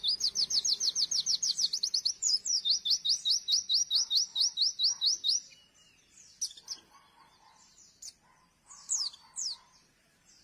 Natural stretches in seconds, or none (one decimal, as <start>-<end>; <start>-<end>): 0.0-1.3; 2.4-10.4